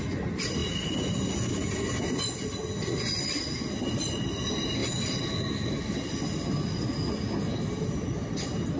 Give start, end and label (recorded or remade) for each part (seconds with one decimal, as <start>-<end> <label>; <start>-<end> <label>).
0.0-8.8 recorded